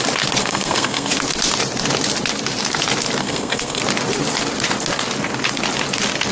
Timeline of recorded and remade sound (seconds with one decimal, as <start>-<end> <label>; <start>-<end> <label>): 0.0-0.4 recorded; 0.4-1.1 remade; 1.1-3.2 recorded; 3.2-3.8 remade; 3.8-6.3 recorded